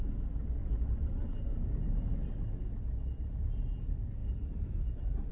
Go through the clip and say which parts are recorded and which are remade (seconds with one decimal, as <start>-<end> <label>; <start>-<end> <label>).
0.0-5.3 recorded